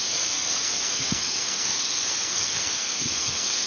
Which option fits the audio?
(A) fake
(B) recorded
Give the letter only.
A